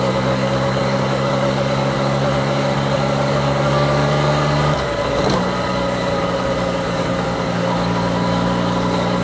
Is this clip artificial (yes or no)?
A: yes